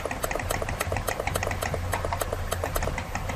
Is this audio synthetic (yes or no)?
yes